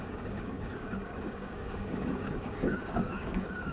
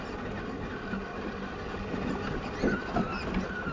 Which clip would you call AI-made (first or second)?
first